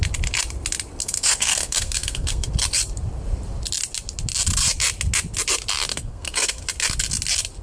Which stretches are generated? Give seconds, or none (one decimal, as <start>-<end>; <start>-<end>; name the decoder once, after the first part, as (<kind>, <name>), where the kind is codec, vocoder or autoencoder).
1.0-2.5 (codec, SNAC); 5.9-6.6